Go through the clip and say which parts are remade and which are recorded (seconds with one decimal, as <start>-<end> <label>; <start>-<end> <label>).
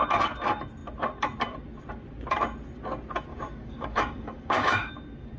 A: 0.0-3.3 recorded; 3.3-4.9 remade; 4.9-5.4 recorded